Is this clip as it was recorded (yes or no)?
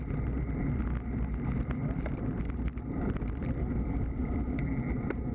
yes